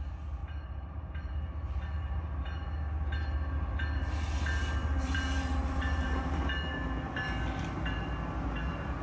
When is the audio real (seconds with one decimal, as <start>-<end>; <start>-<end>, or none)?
0.0-0.4; 2.4-4.8; 6.5-9.0